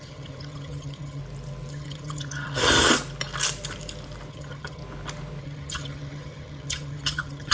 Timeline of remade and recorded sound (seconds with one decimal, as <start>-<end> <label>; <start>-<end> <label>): 0.0-1.2 remade; 1.2-1.7 recorded; 1.7-2.6 remade; 2.6-4.3 recorded; 4.3-4.8 remade; 4.8-5.4 recorded; 5.4-7.5 remade